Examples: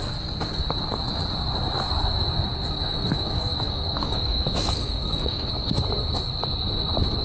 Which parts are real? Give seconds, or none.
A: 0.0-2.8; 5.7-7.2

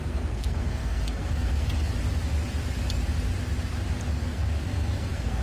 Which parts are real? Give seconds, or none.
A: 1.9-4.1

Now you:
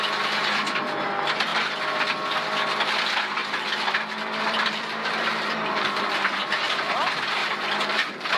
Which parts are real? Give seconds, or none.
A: 0.0-3.4; 6.7-7.4

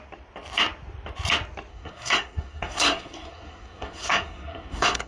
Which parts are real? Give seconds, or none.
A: 0.0-1.7